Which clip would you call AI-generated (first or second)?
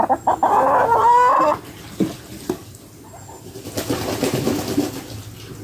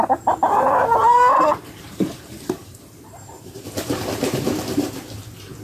second